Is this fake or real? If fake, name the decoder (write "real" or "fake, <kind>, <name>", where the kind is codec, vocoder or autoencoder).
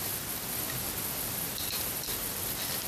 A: real